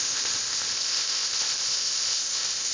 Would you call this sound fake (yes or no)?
yes